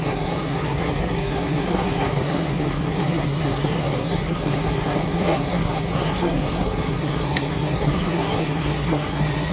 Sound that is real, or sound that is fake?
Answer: fake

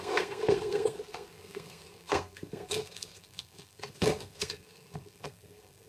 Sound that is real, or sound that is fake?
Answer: fake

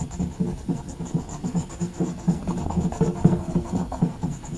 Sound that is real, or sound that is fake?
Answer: fake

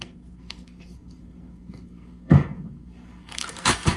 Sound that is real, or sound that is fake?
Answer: fake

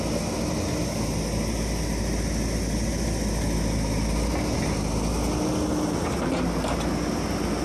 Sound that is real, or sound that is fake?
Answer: real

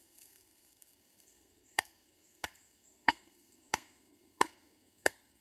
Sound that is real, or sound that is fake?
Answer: fake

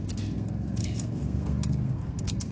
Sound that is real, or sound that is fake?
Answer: fake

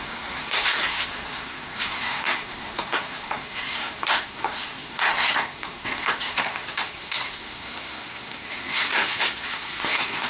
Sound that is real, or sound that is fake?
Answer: fake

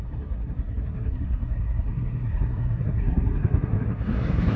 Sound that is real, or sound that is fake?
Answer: fake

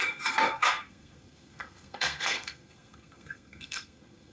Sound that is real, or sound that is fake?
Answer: fake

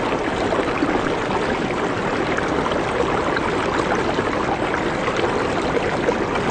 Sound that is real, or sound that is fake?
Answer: real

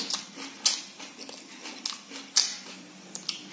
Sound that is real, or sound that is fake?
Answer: real